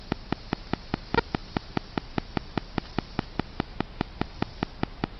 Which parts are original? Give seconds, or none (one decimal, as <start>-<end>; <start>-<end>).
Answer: 0.0-1.4; 2.2-4.4